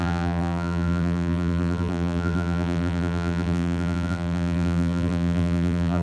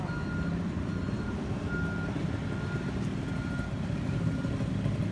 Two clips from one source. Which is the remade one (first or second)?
first